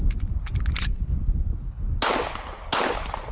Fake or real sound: real